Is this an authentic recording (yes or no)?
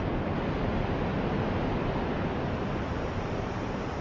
yes